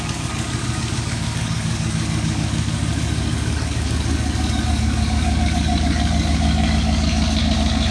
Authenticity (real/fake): fake